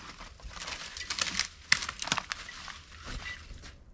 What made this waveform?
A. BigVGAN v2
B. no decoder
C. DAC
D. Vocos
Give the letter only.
B